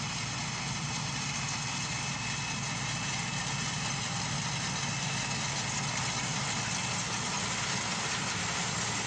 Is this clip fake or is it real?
real